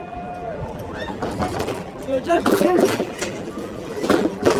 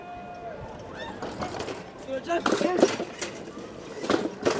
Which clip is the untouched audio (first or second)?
second